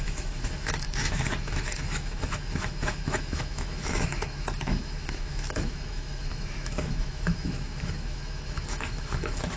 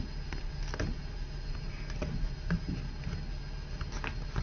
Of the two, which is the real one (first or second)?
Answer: second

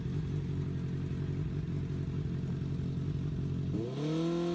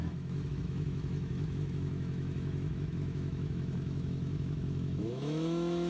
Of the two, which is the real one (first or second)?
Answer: first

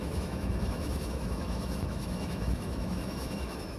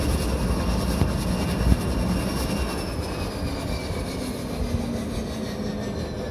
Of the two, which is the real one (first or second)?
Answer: second